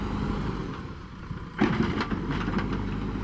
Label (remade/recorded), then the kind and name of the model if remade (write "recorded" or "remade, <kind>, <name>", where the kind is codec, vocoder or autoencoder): remade, vocoder, BigVGAN v2